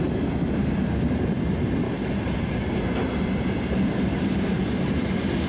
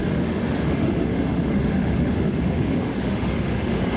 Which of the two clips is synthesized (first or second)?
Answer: second